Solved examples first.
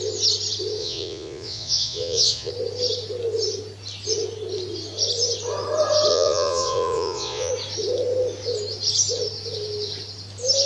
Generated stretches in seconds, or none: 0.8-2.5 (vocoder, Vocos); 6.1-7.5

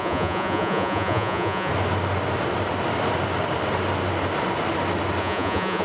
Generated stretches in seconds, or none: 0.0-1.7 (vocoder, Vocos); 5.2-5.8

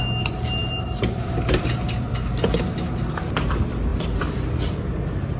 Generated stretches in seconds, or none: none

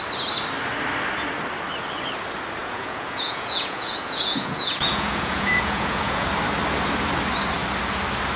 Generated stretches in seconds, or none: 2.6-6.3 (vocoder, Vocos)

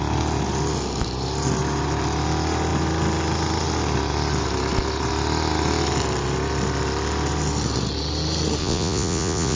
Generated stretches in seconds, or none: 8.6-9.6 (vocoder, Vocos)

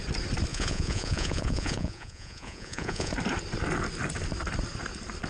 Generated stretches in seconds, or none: 0.5-3.1 (vocoder, Vocos)